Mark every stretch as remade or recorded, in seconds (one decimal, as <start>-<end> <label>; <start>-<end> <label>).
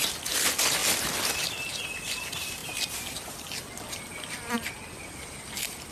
0.0-5.9 recorded